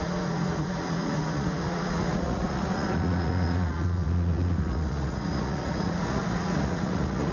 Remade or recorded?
remade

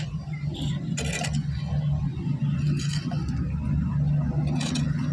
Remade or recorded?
recorded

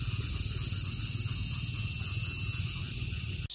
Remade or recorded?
recorded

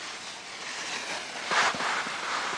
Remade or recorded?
recorded